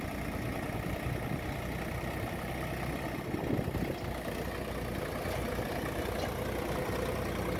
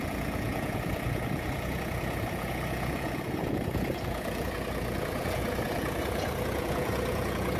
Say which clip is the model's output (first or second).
second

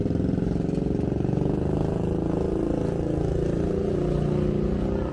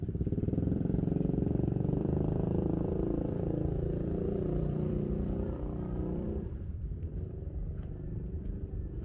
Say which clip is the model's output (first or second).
second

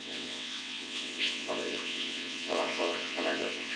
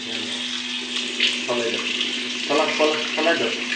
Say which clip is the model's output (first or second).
first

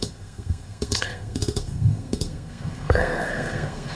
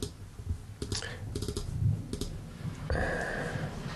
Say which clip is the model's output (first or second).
first